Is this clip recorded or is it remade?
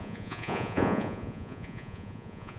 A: remade